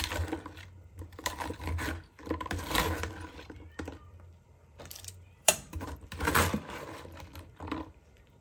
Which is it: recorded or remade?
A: remade